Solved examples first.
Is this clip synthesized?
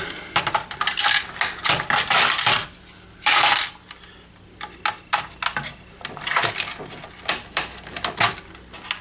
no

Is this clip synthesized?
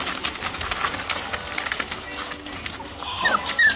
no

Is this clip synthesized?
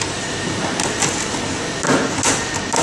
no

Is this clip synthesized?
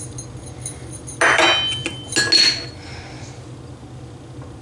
no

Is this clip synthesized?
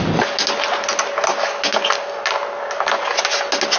no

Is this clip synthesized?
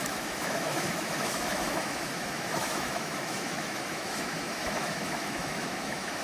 yes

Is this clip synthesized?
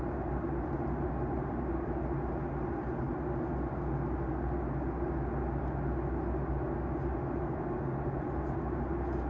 no